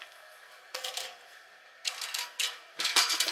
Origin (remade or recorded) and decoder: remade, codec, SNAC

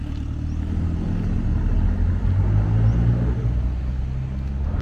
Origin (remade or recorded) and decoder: recorded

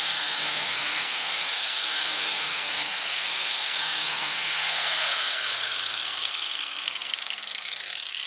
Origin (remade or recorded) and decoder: remade, codec, SNAC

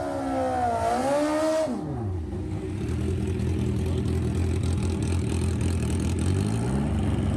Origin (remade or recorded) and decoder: recorded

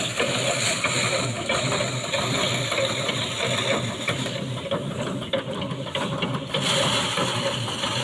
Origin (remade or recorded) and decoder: recorded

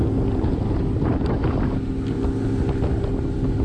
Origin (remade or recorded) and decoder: recorded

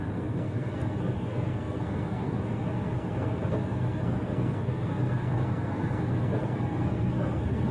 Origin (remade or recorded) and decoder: remade, codec, SNAC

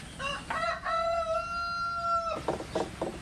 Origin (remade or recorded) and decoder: recorded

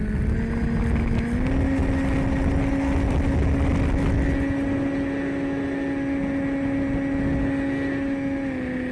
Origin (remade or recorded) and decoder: recorded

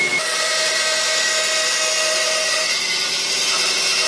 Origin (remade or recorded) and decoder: recorded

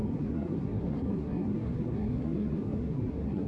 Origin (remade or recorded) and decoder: remade, codec, SNAC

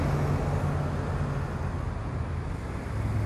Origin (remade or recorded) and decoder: recorded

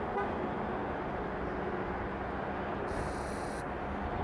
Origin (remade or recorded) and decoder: recorded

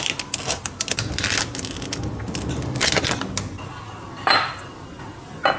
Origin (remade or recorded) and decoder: recorded